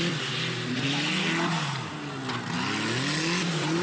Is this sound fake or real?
real